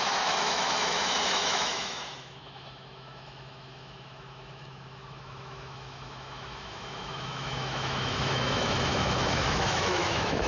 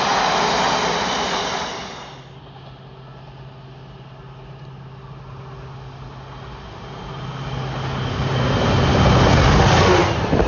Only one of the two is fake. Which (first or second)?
first